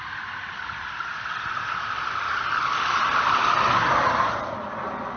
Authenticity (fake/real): real